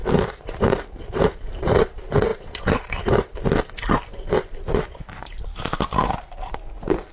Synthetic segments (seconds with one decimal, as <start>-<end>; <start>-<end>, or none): 0.0-1.9; 2.3-3.4; 6.0-6.6